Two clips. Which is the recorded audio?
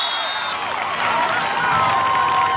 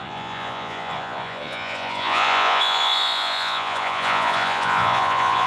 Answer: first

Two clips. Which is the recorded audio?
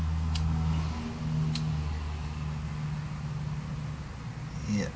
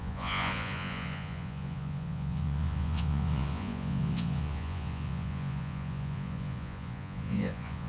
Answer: first